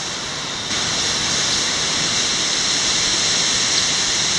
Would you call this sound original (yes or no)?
yes